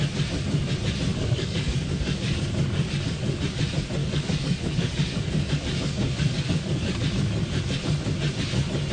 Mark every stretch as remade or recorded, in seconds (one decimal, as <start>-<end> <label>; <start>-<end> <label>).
0.0-1.1 recorded; 1.1-3.4 remade; 3.4-4.0 recorded; 4.0-7.0 remade; 7.0-8.9 recorded